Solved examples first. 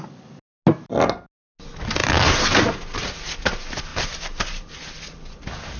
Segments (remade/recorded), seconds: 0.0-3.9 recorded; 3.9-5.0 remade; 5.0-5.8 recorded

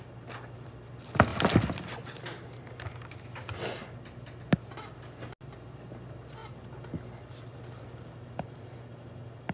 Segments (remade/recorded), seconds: 0.0-9.5 recorded